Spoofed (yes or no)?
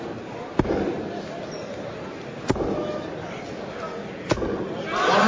no